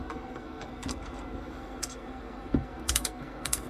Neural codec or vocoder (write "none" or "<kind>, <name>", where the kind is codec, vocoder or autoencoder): codec, SNAC